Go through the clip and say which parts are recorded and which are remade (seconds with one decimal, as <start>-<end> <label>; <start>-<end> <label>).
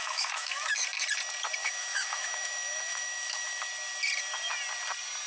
0.0-0.8 remade; 0.8-1.6 recorded; 1.6-3.7 remade; 3.7-5.3 recorded